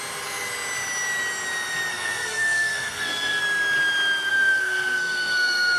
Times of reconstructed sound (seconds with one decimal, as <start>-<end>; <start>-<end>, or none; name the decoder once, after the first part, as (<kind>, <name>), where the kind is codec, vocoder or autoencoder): 1.9-3.4 (codec, SNAC); 4.3-5.8